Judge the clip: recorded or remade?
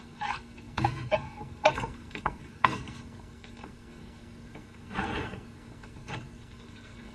remade